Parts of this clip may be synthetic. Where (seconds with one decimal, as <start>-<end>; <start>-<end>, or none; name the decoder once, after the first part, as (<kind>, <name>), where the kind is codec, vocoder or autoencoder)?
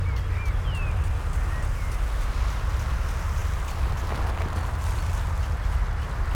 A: none